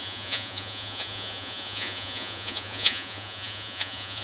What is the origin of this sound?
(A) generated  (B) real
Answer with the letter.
A